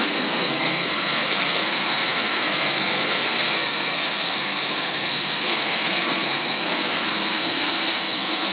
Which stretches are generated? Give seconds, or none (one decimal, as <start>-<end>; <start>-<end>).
0.0-8.5